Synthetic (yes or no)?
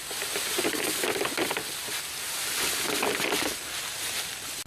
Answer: no